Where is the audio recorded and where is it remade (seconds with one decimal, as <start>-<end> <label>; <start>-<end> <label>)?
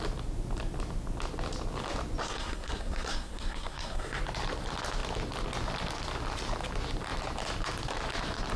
0.0-2.2 recorded; 2.2-4.2 remade; 4.2-8.6 recorded